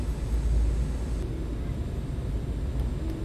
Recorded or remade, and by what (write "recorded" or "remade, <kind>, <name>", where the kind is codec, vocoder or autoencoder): recorded